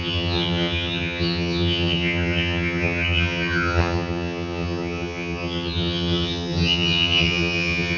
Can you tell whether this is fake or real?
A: fake